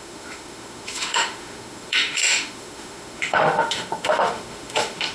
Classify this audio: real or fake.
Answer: fake